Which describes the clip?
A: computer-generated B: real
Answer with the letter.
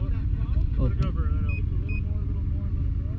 B